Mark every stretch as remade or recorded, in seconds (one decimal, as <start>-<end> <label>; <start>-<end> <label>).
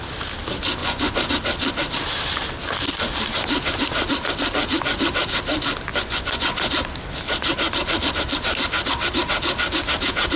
0.0-0.8 recorded; 0.8-1.3 remade; 1.3-5.9 recorded; 5.9-6.7 remade; 6.7-10.4 recorded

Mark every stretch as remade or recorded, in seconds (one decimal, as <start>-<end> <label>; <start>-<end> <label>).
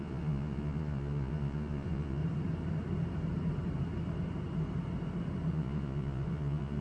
0.0-2.2 remade; 2.2-5.5 recorded; 5.5-6.8 remade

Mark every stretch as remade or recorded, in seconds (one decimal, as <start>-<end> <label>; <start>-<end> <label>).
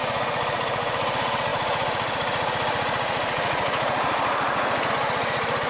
0.0-5.7 remade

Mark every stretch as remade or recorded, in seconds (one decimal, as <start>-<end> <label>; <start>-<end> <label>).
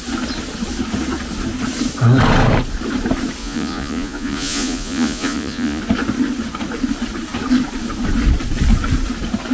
0.0-3.4 recorded; 3.4-5.8 remade; 5.8-9.5 recorded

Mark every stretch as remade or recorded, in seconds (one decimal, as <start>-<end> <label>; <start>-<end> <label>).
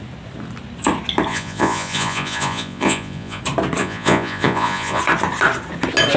0.0-1.3 recorded; 1.3-3.4 remade; 3.4-3.8 recorded; 3.8-5.0 remade; 5.0-6.2 recorded